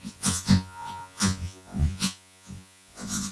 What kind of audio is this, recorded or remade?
remade